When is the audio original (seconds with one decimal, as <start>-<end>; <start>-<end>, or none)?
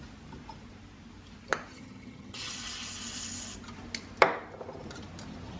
0.0-1.7; 2.5-5.6